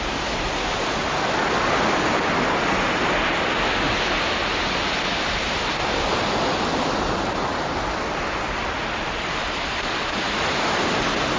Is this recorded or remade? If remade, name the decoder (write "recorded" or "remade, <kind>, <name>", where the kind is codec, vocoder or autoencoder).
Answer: recorded